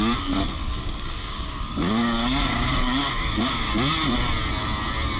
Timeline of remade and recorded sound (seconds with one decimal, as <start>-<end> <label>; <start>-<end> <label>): 0.0-0.6 recorded; 0.6-3.7 remade; 3.7-5.2 recorded